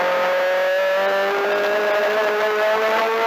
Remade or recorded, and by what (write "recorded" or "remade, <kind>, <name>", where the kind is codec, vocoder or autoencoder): recorded